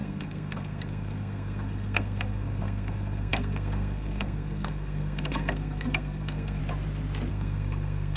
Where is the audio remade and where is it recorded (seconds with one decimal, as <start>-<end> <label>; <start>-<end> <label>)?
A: 0.0-6.6 remade; 6.6-7.3 recorded; 7.3-8.2 remade